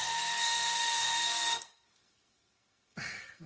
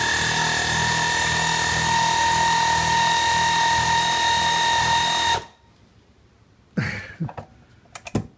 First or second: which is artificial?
first